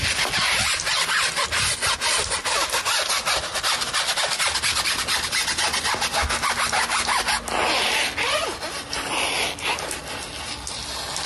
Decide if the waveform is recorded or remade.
recorded